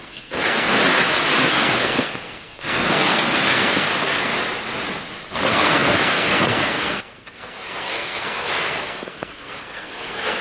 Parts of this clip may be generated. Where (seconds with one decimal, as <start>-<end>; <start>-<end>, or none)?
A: 0.0-0.8; 1.5-4.3; 5.3-10.4